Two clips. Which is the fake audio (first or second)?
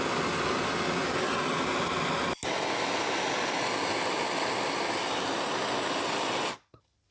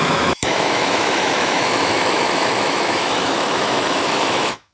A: second